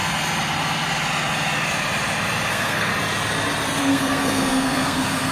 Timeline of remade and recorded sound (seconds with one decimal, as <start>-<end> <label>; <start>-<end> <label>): 0.0-2.5 recorded; 2.5-2.9 remade; 2.9-3.8 recorded; 3.8-5.3 remade